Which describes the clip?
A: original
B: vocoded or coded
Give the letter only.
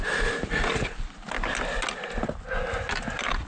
A